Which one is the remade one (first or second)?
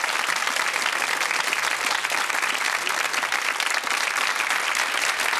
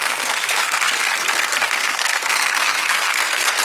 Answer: second